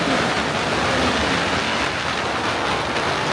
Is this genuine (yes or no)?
yes